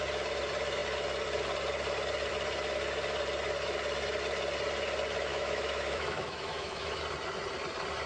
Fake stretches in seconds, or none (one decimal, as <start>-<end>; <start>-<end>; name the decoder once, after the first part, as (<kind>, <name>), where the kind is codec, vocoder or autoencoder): 5.3-7.0 (autoencoder, DAC-VAE)